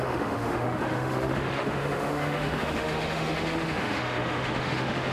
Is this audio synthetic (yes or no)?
yes